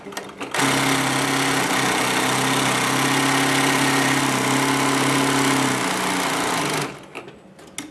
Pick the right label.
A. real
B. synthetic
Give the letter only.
A